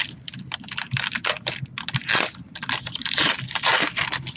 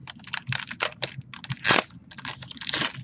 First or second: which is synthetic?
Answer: first